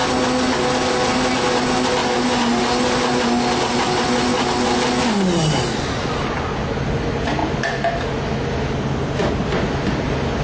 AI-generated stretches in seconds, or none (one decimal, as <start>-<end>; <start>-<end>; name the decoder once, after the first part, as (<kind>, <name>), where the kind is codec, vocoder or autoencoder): none